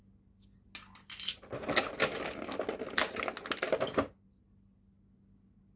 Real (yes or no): yes